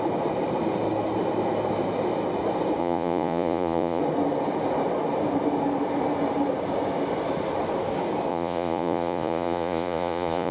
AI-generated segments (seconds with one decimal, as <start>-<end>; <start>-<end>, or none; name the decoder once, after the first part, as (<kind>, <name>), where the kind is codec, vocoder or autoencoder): 2.8-4.0 (vocoder, Vocos); 8.3-10.5